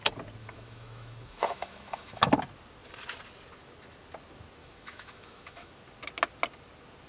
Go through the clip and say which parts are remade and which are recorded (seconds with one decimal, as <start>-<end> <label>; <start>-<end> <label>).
0.0-0.4 recorded; 0.4-2.3 remade; 2.3-4.6 recorded; 4.6-5.7 remade; 5.7-7.1 recorded